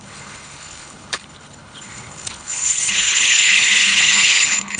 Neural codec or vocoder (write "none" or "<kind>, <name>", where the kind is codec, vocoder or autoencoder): codec, HILCodec